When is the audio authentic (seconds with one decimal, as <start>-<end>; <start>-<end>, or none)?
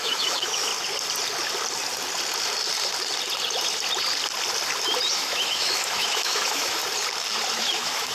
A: 0.7-5.1; 6.8-7.5